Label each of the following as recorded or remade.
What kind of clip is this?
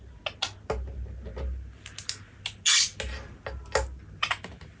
recorded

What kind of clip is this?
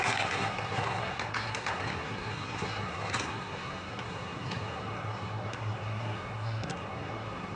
remade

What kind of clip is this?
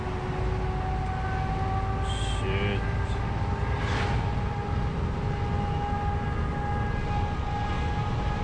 recorded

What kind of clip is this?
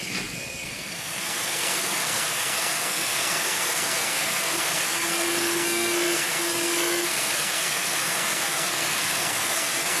remade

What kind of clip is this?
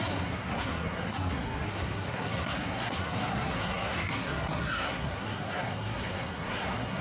remade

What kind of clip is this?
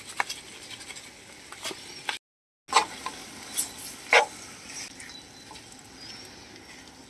recorded